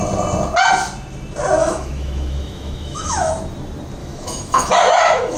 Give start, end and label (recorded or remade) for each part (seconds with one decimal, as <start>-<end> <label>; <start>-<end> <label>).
0.0-1.6 recorded; 1.6-3.3 remade; 3.3-4.0 recorded; 4.0-5.4 remade